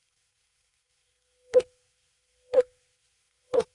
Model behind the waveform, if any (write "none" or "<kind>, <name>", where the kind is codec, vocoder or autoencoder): codec, SNAC